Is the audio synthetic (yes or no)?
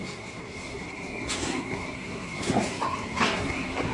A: yes